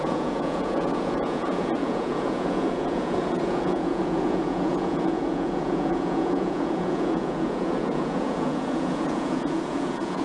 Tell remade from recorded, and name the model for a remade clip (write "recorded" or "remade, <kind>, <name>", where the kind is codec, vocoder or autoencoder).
remade, vocoder, Vocos